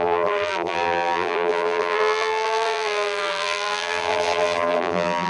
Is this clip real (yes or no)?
no